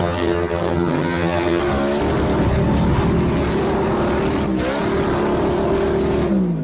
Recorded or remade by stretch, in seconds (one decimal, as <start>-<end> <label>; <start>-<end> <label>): 0.0-1.6 remade; 1.6-6.6 recorded